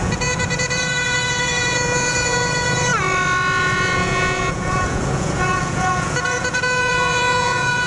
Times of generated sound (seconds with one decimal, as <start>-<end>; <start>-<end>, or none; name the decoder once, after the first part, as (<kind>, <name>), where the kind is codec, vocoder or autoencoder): 0.0-2.9 (vocoder, Vocos); 3.6-7.9